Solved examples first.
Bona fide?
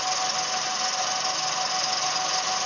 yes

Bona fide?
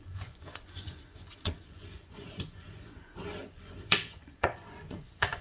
no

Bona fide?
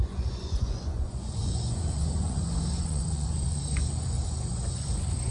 no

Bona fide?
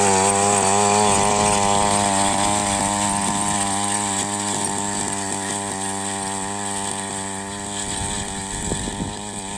yes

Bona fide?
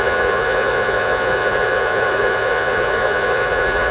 no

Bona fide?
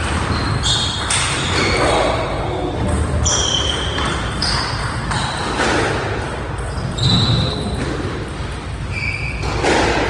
yes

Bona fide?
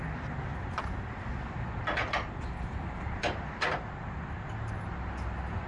yes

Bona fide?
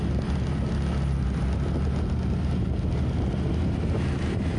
yes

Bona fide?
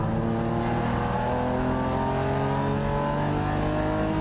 yes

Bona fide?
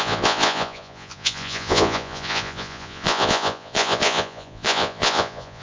no